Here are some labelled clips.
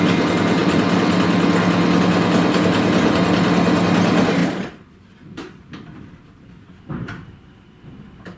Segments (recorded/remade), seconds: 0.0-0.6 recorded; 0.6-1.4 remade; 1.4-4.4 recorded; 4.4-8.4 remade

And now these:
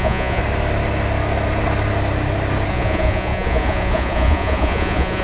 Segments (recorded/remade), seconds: 0.0-0.4 remade; 0.4-2.7 recorded; 2.7-5.2 remade

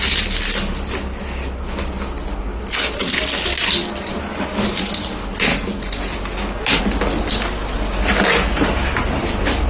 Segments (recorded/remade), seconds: 0.0-9.7 recorded

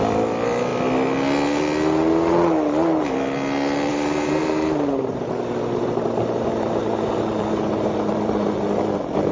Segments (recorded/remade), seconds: 0.0-3.9 recorded; 3.9-8.5 remade; 8.5-9.3 recorded

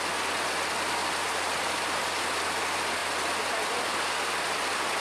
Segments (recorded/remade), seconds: 0.0-1.0 recorded; 1.0-2.1 remade; 2.1-5.0 recorded

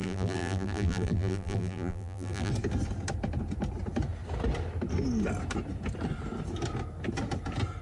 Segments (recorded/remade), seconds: 0.0-2.5 remade; 2.5-7.8 recorded

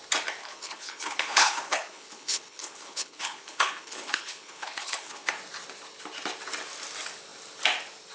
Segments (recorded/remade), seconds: 0.0-0.4 recorded; 0.4-5.3 remade; 5.3-8.1 recorded